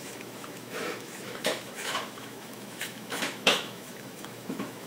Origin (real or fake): fake